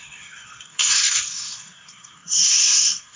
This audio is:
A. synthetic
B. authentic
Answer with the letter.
A